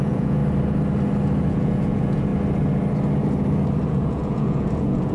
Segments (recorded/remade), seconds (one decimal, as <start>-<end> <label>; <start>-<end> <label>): 0.0-0.4 remade; 0.4-1.5 recorded; 1.5-2.3 remade; 2.3-3.9 recorded; 3.9-5.1 remade